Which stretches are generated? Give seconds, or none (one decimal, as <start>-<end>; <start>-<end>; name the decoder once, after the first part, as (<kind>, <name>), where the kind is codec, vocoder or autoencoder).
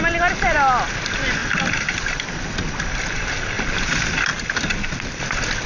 none